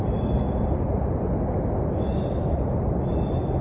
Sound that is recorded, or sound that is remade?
recorded